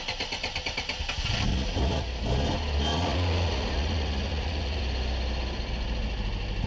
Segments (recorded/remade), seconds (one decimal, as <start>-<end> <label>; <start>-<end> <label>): 0.0-1.5 recorded; 1.5-2.1 remade; 2.1-2.9 recorded; 2.9-4.8 remade; 4.8-6.7 recorded